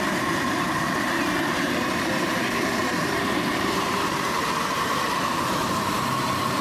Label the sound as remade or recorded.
remade